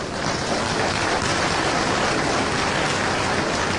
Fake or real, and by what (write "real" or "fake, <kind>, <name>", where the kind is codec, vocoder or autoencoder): real